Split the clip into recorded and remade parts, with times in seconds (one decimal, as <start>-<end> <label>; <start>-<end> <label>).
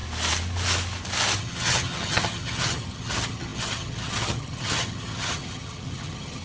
0.0-1.4 recorded; 1.4-6.4 remade